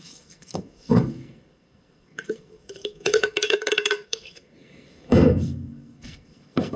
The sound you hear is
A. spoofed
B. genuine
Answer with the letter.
A